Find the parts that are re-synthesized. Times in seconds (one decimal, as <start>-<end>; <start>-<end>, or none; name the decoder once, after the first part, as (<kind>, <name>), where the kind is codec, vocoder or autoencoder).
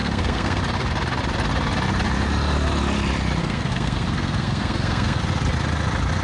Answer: 0.0-0.6 (codec, SNAC); 3.4-5.2